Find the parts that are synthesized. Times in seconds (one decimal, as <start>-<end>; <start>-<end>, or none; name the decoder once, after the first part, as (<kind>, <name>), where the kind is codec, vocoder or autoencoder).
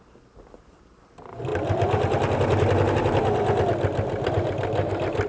none